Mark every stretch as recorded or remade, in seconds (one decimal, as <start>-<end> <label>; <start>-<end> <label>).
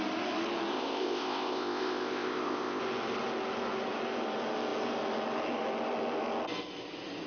0.0-0.7 recorded; 0.7-2.8 remade; 2.8-7.3 recorded